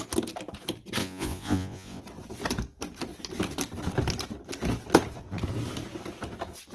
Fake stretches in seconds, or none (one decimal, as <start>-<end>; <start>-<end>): 1.0-2.0